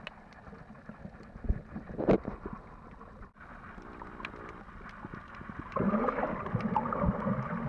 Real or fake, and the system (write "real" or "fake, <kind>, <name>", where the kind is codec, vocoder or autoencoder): real